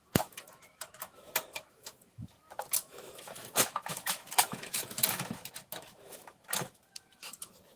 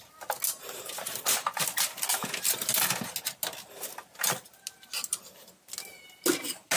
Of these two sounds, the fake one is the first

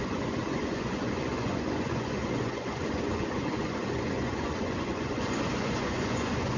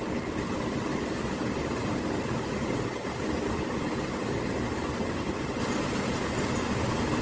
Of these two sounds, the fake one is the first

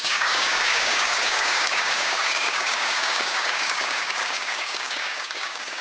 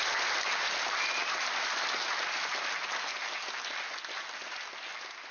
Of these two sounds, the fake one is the first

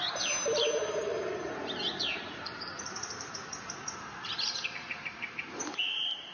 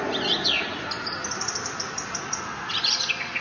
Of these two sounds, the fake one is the first